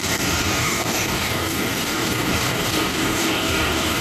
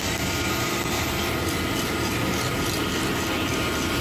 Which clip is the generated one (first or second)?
first